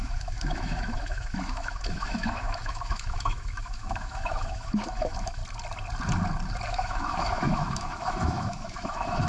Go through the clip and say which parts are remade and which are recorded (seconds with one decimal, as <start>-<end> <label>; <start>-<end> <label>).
0.0-5.4 remade; 5.4-6.7 recorded; 6.7-9.3 remade